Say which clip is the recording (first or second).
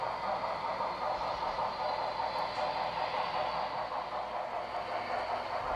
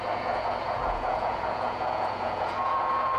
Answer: first